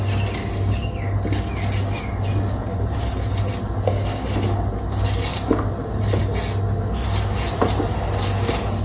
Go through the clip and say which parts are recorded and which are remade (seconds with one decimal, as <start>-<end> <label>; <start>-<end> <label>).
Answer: 0.0-2.7 recorded; 2.7-3.3 remade; 3.3-5.3 recorded; 5.3-6.2 remade; 6.2-8.8 recorded